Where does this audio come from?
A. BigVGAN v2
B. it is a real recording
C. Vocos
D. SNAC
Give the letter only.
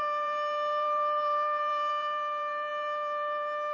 A